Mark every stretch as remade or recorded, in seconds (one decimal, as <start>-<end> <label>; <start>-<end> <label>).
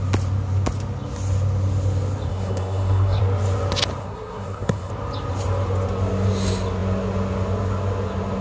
0.0-2.3 recorded; 2.3-3.2 remade; 3.2-4.0 recorded; 4.0-4.9 remade; 4.9-8.4 recorded